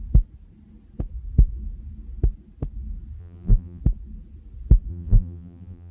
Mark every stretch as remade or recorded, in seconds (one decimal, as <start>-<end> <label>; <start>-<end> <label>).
0.0-3.2 recorded; 3.2-3.8 remade; 3.8-4.9 recorded; 4.9-5.9 remade